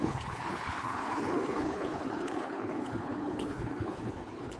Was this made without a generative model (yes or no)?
no